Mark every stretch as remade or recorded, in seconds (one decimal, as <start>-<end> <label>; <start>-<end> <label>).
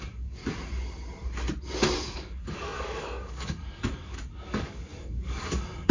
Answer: 0.0-0.4 remade; 0.4-2.0 recorded; 2.0-5.9 remade